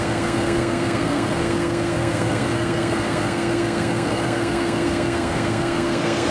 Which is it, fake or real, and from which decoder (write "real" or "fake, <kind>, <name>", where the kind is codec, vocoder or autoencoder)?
fake, codec, SNAC